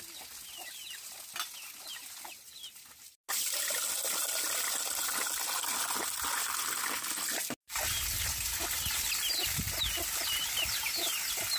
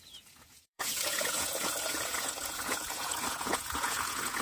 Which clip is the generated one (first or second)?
second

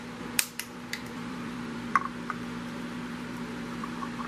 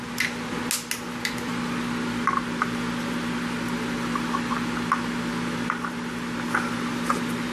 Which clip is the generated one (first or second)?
first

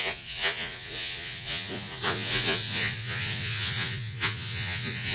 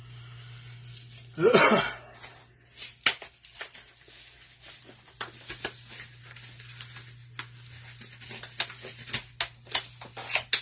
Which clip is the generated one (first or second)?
first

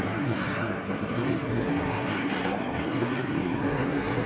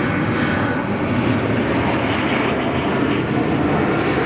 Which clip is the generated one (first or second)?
first